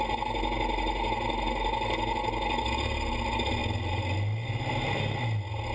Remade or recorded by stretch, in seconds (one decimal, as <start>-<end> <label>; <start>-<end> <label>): 0.0-5.7 recorded